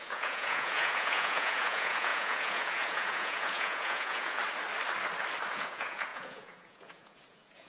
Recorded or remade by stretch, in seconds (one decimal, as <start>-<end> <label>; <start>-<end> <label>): 0.0-4.4 remade; 4.4-5.5 recorded; 5.5-7.7 remade